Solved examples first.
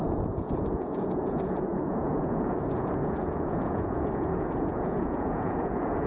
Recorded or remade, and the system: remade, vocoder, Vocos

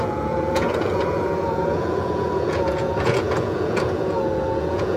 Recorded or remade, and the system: remade, vocoder, Vocos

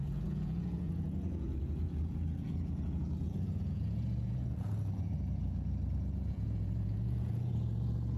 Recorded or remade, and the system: remade, vocoder, Vocos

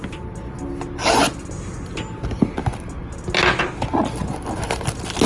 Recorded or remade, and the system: recorded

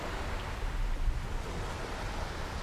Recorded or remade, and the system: recorded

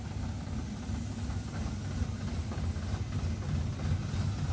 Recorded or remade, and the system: recorded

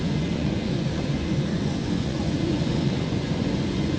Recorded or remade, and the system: remade, vocoder, Vocos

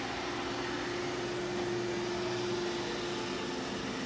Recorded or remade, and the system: recorded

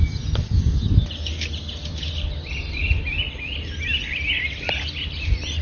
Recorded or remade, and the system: recorded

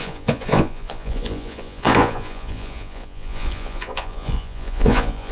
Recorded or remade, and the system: remade, vocoder, Vocos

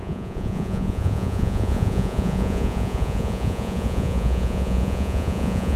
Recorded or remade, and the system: remade, vocoder, Vocos